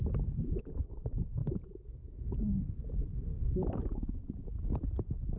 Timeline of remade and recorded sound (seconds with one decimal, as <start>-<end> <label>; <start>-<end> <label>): 0.0-1.4 recorded; 1.4-2.7 remade; 2.7-3.3 recorded; 3.3-4.4 remade; 4.4-5.4 recorded